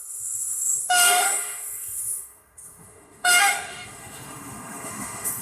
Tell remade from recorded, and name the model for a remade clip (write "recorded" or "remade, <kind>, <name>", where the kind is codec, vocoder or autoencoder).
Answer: remade, autoencoder, DAC-VAE